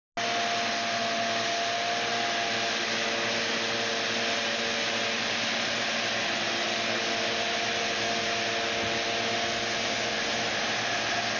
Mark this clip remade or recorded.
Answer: recorded